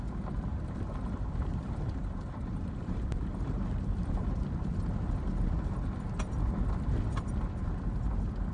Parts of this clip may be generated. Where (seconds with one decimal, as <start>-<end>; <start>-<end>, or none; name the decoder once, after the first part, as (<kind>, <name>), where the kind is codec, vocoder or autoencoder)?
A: 0.5-4.2 (vocoder, BigVGAN v2)